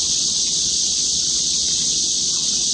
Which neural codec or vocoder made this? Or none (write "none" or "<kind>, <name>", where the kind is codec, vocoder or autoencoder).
vocoder, Vocos